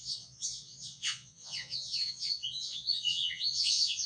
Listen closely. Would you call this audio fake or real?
fake